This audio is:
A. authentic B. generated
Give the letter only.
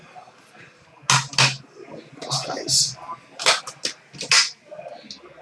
A